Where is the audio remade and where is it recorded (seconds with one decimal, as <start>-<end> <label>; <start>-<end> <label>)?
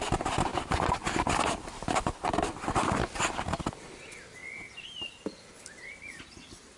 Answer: 0.0-6.8 recorded